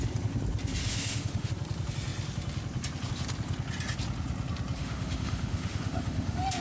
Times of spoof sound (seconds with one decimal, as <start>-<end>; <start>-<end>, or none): 0.8-1.5; 4.8-6.6